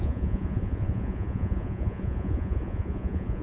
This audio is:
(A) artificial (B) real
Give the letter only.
A